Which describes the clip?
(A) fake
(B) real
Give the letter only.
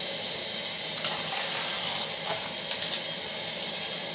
B